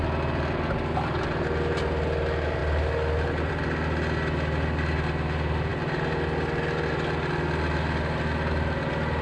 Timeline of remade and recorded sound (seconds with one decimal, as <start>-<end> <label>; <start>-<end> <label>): 0.0-9.2 recorded